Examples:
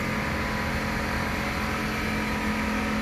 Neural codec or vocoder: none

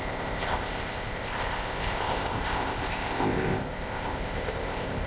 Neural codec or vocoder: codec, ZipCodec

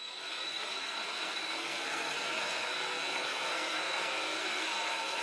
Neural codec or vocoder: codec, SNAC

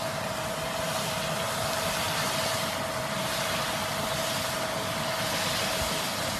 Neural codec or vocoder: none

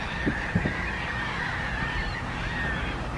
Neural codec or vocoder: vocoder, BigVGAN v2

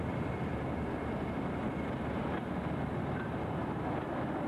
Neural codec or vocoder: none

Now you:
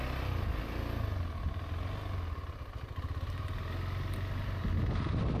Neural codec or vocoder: none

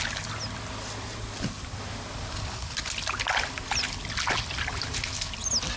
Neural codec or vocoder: none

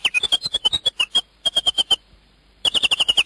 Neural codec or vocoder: vocoder, BigVGAN v2